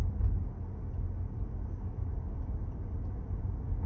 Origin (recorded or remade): recorded